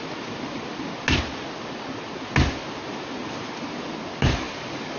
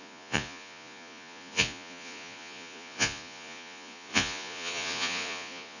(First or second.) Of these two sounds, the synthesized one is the second